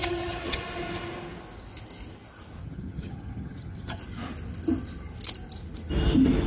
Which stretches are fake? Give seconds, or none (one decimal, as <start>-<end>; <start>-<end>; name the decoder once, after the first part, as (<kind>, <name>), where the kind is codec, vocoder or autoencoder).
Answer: 0.0-0.6 (vocoder, HiFi-GAN); 2.6-4.0